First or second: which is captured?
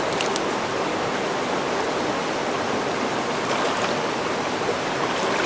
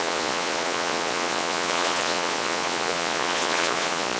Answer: first